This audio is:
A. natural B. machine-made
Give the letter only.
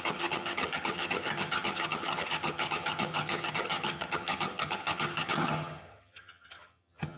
B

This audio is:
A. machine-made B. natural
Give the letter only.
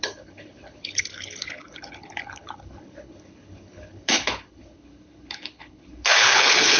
A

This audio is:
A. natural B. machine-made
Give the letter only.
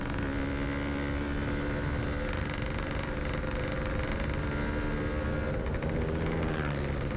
A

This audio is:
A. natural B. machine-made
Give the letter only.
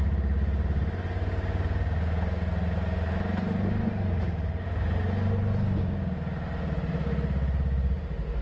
A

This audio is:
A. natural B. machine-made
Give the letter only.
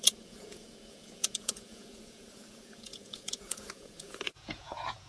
B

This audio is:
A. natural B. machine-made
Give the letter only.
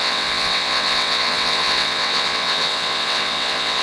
B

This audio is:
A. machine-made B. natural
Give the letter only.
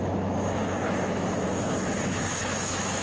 A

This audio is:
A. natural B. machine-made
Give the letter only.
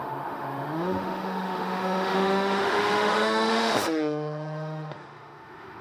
B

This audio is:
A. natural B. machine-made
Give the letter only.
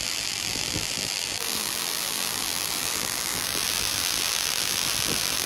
B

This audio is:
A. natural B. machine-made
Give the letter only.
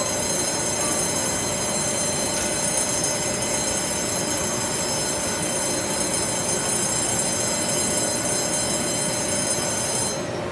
A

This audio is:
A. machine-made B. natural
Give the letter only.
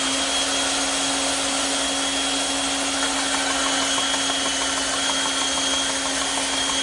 B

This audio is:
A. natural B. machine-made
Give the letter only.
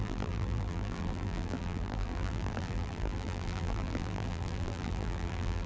B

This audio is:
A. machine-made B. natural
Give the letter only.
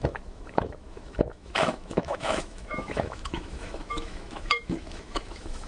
A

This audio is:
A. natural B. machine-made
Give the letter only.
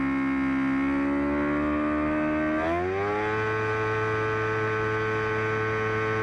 A